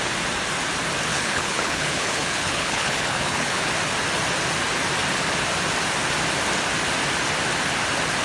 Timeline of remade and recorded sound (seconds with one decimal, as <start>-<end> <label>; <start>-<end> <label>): 0.0-1.1 recorded; 1.1-3.7 remade; 3.7-8.2 recorded